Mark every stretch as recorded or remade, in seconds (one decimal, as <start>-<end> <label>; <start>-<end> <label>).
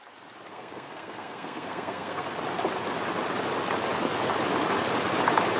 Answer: 0.0-0.5 recorded; 0.5-2.4 remade; 2.4-5.6 recorded